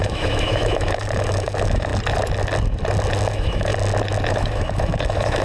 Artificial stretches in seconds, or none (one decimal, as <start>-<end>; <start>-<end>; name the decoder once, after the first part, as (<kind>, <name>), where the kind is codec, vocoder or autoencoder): 0.0-1.9 (autoencoder, DAC-VAE); 3.3-3.7; 4.3-5.4